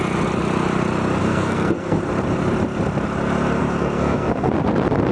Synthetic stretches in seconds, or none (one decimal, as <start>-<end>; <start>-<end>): 1.2-2.0; 3.6-4.5